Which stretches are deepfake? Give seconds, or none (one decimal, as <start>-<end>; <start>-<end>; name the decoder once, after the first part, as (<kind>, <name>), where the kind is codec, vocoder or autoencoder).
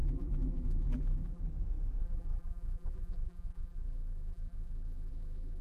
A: 0.0-1.4 (vocoder, BigVGAN v2); 2.0-5.6